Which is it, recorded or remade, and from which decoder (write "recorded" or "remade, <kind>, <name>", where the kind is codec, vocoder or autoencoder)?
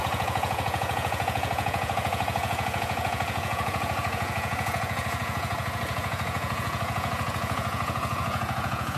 remade, vocoder, Vocos